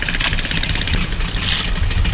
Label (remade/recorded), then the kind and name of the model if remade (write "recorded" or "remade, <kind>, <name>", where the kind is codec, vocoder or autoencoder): recorded